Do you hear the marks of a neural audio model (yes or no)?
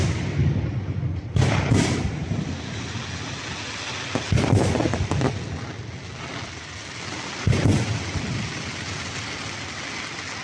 no